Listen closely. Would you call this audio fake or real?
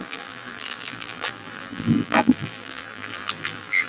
fake